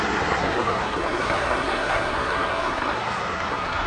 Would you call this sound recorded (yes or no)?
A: no